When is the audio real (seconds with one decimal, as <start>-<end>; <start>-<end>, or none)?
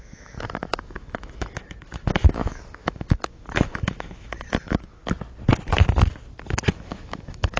5.0-6.7